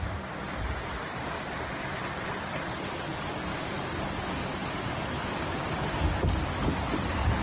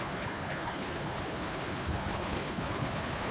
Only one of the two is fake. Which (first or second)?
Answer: second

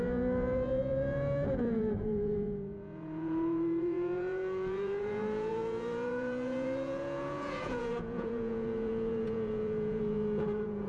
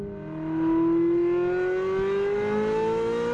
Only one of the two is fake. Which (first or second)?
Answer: first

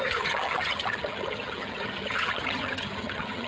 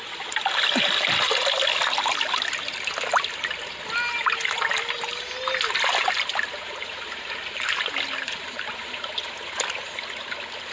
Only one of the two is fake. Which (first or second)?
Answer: first